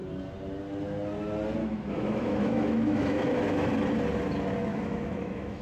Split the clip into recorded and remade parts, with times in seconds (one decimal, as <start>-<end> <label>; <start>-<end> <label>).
0.0-1.6 recorded; 1.6-3.7 remade; 3.7-4.7 recorded; 4.7-5.6 remade